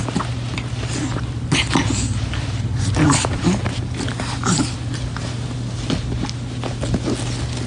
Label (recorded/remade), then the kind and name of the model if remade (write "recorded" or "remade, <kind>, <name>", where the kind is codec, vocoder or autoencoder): recorded